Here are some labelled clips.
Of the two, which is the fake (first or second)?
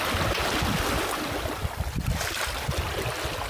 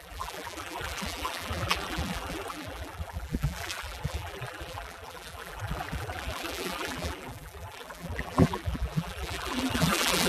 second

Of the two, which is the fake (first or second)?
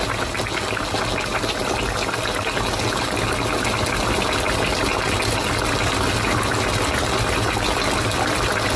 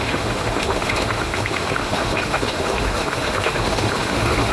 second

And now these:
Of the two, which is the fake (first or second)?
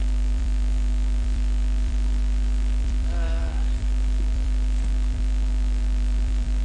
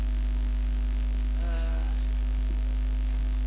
first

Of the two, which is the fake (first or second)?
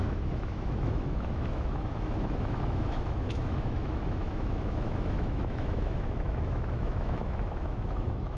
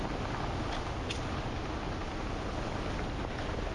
first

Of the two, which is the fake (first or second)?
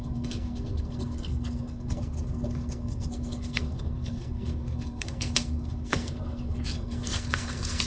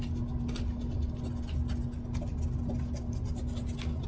first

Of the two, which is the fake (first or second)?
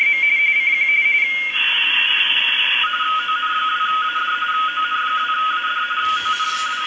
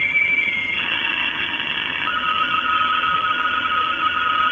second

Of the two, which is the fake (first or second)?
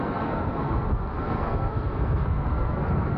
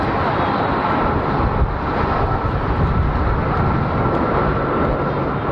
first